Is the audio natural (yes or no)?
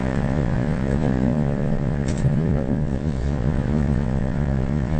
no